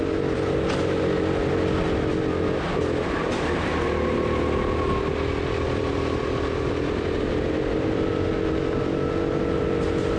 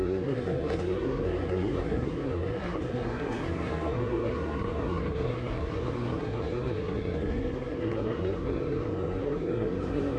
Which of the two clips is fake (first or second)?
second